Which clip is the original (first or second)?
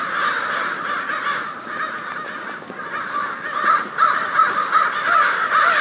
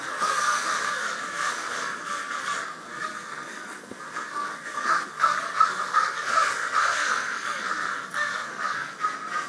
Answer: first